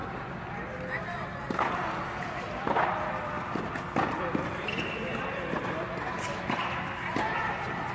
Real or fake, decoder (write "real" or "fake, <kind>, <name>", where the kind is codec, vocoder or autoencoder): real